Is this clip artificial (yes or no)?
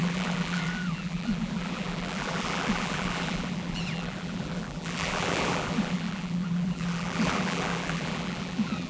yes